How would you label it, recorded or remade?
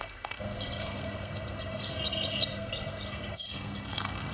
remade